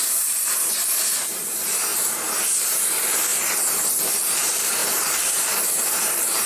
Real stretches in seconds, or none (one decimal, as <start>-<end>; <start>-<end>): 1.9-2.6; 3.3-4.1